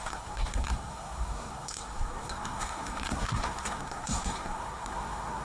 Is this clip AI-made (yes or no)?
yes